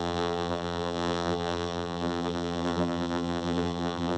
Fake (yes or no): yes